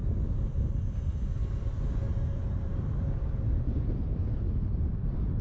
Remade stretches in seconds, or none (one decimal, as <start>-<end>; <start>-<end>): 2.5-3.8